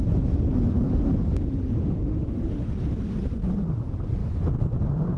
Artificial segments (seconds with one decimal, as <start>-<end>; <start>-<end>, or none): 1.8-2.7